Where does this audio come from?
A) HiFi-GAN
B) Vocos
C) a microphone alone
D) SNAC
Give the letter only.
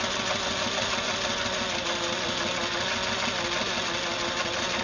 C